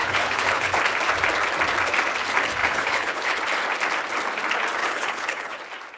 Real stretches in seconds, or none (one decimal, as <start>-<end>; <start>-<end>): 0.8-2.6; 3.4-4.8; 5.6-6.0